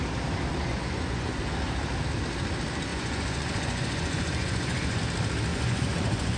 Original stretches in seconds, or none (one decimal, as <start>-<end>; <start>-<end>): 0.0-0.5; 1.4-2.9; 5.0-5.5